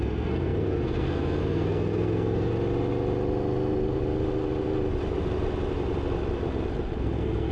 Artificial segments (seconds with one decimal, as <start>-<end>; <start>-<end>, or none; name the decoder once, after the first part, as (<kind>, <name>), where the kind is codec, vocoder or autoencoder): 0.0-2.5 (codec, SNAC); 7.0-7.5